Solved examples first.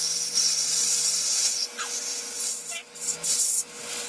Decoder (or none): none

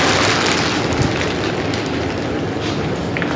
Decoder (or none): none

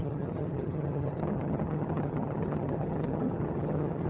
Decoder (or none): vocoder, HiFi-GAN